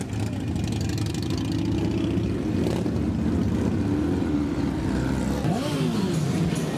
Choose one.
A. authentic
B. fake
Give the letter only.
A